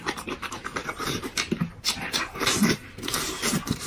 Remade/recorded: remade